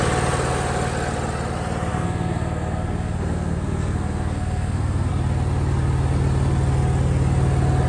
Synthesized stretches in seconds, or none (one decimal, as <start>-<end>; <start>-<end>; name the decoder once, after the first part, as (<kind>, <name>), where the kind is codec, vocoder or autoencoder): 1.9-5.1 (codec, SNAC)

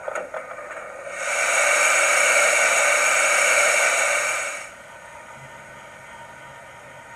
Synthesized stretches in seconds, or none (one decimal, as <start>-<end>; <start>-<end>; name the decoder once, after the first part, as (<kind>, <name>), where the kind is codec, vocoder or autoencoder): none

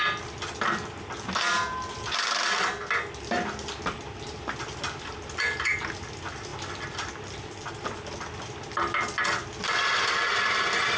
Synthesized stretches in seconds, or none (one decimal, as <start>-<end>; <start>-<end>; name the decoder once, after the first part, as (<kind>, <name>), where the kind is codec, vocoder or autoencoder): none

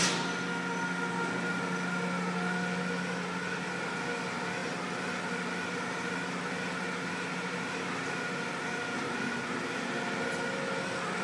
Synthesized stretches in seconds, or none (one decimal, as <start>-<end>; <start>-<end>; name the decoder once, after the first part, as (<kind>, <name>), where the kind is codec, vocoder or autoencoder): none

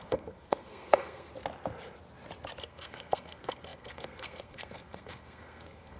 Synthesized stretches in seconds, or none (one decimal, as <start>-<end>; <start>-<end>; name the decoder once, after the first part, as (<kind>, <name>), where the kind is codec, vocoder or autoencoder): 0.0-1.3 (codec, SNAC); 2.6-6.0

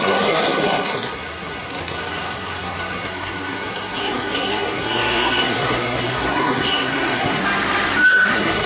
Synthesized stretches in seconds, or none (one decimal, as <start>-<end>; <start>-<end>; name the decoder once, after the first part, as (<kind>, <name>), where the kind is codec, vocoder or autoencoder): 0.0-7.4 (codec, SNAC); 8.1-8.7

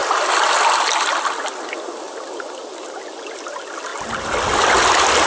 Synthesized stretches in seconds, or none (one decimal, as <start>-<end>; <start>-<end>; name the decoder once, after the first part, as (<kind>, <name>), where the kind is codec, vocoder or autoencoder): none